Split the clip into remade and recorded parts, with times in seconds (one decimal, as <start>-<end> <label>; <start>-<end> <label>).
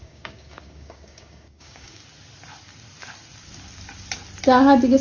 0.0-2.0 remade; 2.0-5.0 recorded